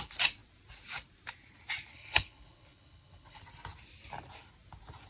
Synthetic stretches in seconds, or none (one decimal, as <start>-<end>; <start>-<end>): 1.9-3.4